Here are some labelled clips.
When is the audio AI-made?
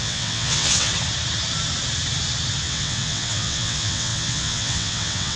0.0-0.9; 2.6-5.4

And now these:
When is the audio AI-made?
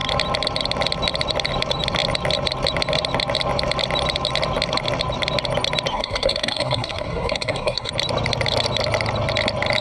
5.9-7.9